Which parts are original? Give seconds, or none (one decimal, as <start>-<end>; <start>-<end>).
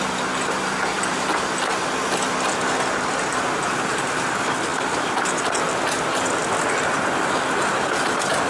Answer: 0.0-8.5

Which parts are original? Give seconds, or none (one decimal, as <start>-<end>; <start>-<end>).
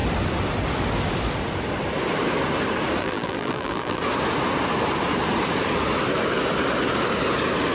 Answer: 0.0-3.0; 4.0-7.7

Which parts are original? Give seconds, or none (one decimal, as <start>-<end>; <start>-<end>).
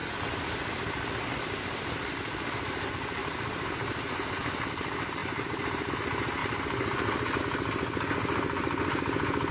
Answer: 0.0-3.2; 4.6-5.2; 5.9-6.4; 7.4-9.5